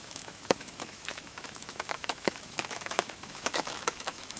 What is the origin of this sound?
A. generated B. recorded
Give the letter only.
A